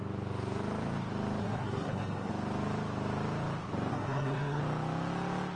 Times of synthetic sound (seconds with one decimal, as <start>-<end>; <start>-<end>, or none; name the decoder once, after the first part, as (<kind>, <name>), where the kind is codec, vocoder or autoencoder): 1.4-2.3 (codec, SNAC); 3.9-4.6